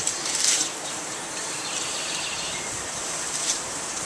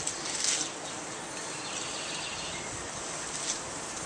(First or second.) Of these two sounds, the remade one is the first